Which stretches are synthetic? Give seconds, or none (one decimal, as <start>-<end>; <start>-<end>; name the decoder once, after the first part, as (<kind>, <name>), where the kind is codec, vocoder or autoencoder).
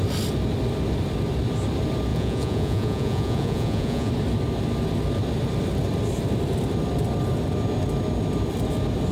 2.1-4.1 (vocoder, Vocos)